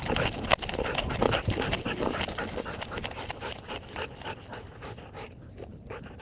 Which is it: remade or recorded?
recorded